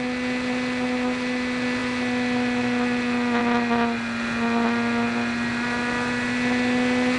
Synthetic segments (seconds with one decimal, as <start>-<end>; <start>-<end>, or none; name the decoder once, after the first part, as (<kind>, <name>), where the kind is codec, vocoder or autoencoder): none